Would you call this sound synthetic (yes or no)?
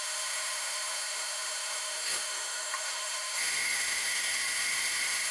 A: yes